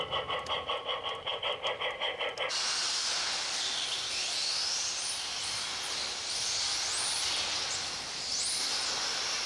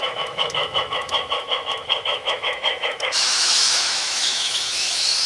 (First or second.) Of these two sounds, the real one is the first